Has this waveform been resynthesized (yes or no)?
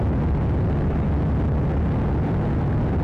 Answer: no